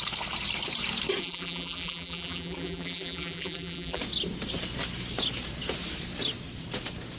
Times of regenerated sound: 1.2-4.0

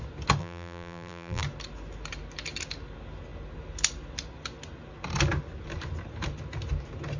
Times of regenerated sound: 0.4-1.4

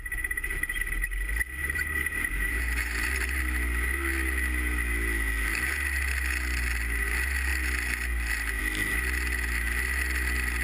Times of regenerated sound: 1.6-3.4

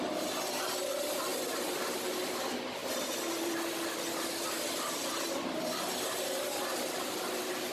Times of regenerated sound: 2.8-7.7

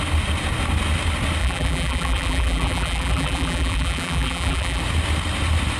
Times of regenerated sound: 1.4-4.8